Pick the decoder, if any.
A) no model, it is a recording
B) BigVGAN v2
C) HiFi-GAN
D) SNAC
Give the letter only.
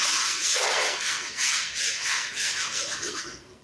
D